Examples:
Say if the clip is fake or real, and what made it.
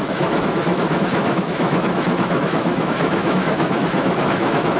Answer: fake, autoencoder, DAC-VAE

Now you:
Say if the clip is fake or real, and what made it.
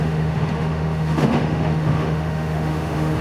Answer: fake, autoencoder, DAC-VAE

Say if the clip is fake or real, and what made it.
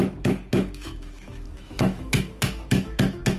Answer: fake, autoencoder, DAC-VAE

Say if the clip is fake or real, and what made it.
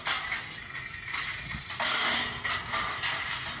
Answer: real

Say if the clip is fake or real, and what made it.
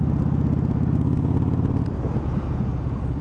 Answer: real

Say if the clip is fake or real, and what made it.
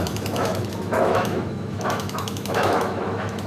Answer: fake, autoencoder, DAC-VAE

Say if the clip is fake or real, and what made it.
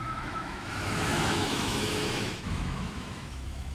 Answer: fake, autoencoder, DAC-VAE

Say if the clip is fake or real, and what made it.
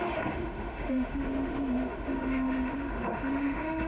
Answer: fake, autoencoder, DAC-VAE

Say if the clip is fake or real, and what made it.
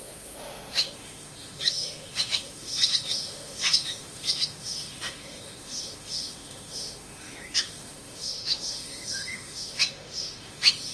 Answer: fake, autoencoder, DAC-VAE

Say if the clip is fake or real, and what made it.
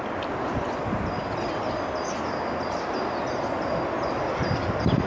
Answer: real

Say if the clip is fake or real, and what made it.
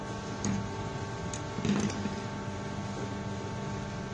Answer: real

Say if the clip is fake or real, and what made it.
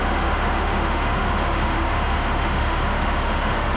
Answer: fake, autoencoder, DAC-VAE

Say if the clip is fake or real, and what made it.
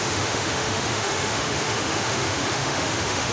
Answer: fake, autoencoder, DAC-VAE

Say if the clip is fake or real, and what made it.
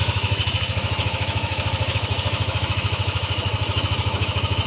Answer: fake, autoencoder, DAC-VAE